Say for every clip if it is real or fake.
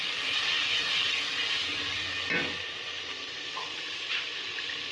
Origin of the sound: real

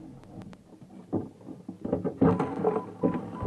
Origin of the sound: real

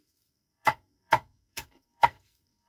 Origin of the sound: fake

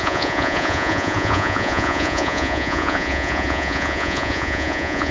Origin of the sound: fake